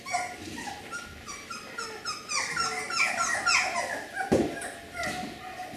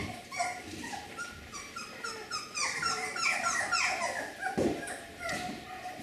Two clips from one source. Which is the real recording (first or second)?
first